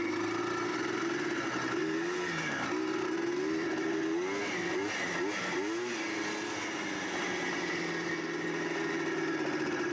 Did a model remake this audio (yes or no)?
no